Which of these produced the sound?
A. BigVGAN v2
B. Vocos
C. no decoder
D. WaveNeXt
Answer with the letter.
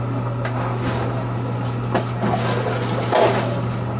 C